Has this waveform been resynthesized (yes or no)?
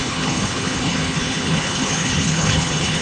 yes